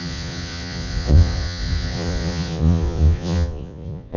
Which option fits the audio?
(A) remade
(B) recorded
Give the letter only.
A